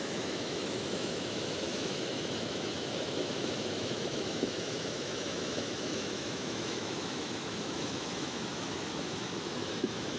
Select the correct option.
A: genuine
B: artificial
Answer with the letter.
B